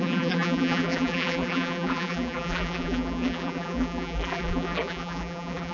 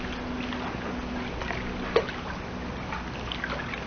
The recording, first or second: second